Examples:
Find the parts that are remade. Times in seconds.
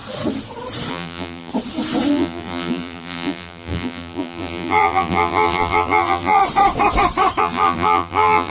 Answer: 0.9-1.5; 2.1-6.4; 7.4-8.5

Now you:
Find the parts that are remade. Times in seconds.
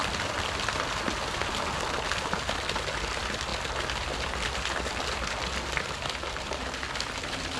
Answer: none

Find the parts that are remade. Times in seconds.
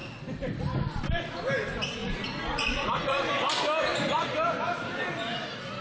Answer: 2.0-3.3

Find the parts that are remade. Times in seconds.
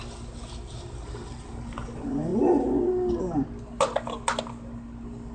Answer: none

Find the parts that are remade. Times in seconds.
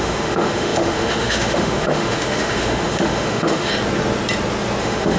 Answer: 0.0-3.7; 4.8-5.2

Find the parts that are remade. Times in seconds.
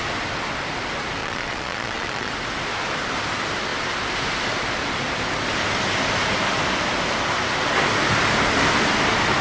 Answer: 1.2-2.3